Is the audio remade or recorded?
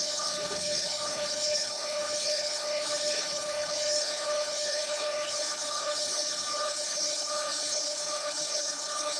remade